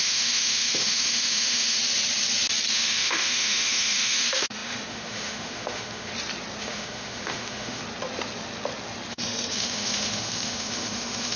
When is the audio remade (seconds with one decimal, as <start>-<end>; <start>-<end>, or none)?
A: 0.0-1.8; 2.7-6.1; 6.6-7.8; 9.1-11.4